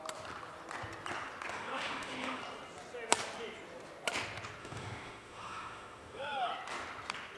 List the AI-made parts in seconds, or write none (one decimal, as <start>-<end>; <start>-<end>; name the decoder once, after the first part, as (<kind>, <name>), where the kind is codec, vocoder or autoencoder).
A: 1.5-2.4 (autoencoder, DAC-VAE); 4.6-6.5